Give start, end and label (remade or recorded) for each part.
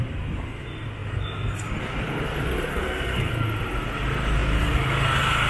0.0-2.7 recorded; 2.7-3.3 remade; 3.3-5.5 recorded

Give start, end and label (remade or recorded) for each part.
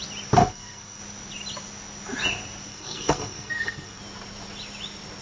0.0-0.4 recorded; 0.4-1.0 remade; 1.0-2.7 recorded; 2.7-4.0 remade; 4.0-5.2 recorded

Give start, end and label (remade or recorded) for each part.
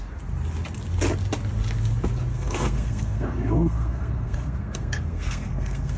0.0-2.3 recorded; 2.3-6.0 remade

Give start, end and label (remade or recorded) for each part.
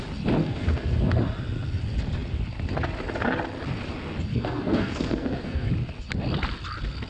0.0-0.4 recorded; 0.4-1.2 remade; 1.2-4.3 recorded; 4.3-5.7 remade; 5.7-7.1 recorded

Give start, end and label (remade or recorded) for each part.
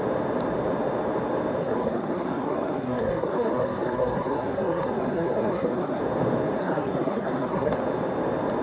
0.0-1.6 recorded; 1.6-6.0 remade; 6.0-6.6 recorded; 6.6-7.8 remade; 7.8-8.6 recorded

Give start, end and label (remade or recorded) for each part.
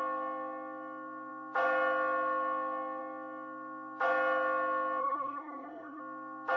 0.0-5.0 recorded; 5.0-6.0 remade; 6.0-6.6 recorded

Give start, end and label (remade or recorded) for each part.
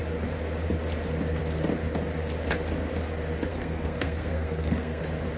0.0-3.5 recorded; 3.5-5.0 remade; 5.0-5.4 recorded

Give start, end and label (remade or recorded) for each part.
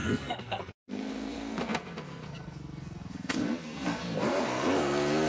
0.0-5.3 remade